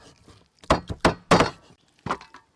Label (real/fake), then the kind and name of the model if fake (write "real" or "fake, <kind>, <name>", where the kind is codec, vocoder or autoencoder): real